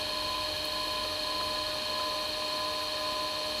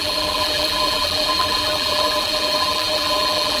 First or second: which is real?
first